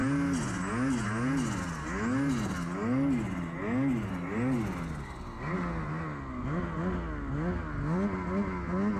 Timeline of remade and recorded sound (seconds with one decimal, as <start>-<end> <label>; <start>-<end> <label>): 0.0-9.0 recorded